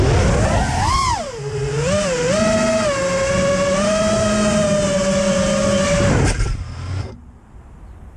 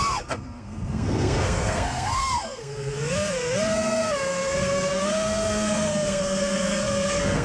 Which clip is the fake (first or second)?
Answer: second